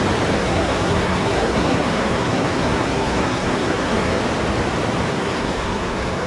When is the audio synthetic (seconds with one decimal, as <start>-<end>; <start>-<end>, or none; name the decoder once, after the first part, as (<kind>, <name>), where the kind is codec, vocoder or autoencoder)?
0.4-4.2 (codec, SNAC); 5.1-6.3